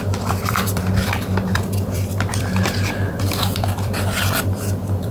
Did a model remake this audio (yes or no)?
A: yes